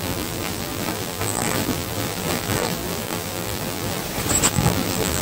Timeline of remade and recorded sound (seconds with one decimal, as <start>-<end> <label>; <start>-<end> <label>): 0.0-4.0 remade; 4.0-4.5 recorded; 4.5-5.2 remade